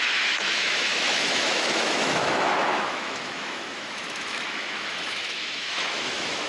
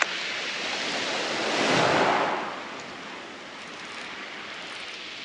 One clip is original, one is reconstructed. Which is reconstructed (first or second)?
first